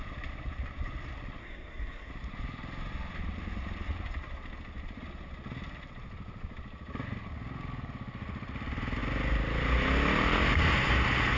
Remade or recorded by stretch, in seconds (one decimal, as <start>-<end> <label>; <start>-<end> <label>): 0.0-1.4 recorded; 1.4-2.1 remade; 2.1-11.4 recorded